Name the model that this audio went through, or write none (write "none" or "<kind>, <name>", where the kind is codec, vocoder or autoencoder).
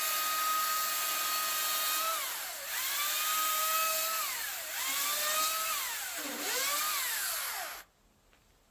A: none